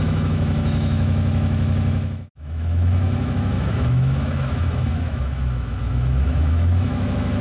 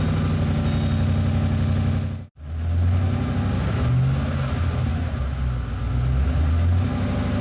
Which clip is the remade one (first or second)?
first